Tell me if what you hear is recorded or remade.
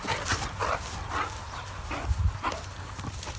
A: recorded